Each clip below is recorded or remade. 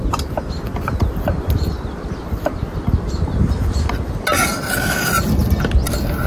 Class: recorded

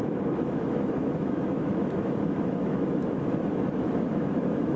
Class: remade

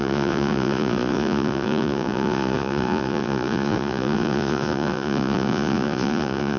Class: remade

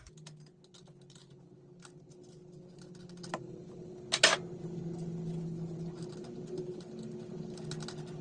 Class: recorded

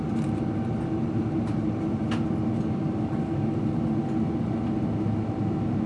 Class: recorded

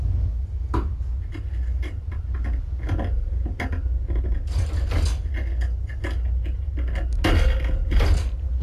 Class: recorded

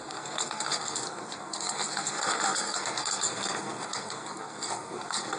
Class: remade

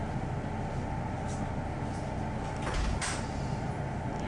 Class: recorded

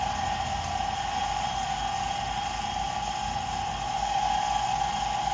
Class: recorded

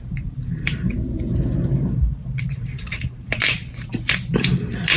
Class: remade